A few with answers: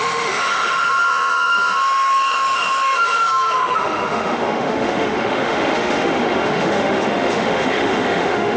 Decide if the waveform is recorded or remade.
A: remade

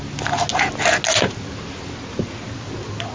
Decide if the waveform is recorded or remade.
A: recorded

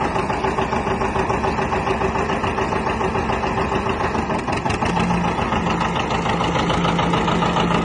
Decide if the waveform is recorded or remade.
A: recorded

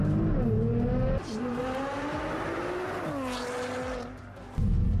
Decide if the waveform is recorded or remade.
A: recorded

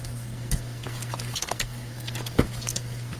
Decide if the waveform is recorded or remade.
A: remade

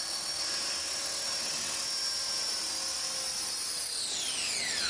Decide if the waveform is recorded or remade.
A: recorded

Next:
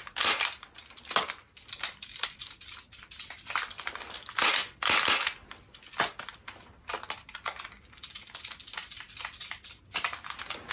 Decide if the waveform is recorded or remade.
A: recorded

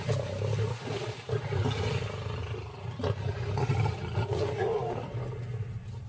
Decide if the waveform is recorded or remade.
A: recorded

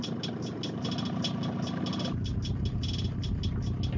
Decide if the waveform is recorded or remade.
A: recorded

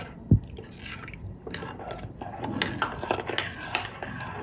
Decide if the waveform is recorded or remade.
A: recorded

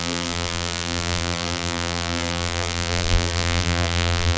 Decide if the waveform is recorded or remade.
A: remade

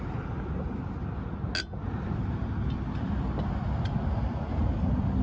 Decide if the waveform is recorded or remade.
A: recorded